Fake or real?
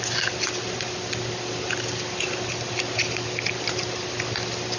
real